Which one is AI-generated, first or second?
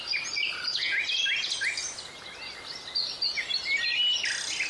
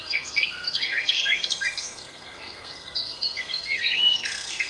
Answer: second